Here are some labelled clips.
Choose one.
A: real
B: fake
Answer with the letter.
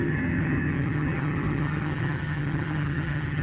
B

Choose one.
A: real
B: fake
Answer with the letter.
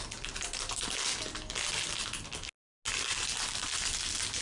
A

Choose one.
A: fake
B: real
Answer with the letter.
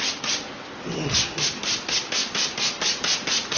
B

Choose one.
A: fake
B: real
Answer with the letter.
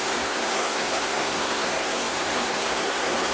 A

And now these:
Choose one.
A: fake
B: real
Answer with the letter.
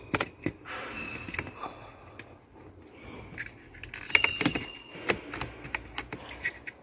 B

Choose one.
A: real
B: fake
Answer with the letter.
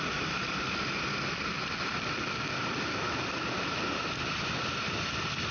A